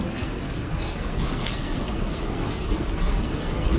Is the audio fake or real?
fake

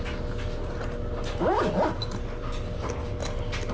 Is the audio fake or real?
real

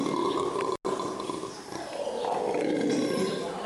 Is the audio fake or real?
real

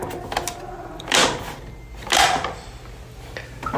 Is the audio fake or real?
real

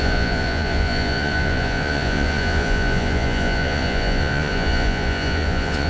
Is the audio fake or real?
fake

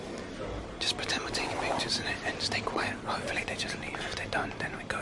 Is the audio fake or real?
real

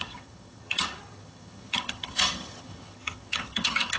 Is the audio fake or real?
fake